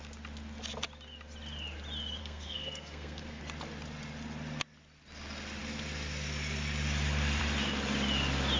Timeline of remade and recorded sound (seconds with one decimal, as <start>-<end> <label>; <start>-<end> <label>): 0.0-2.2 recorded; 2.2-3.4 remade; 3.4-8.6 recorded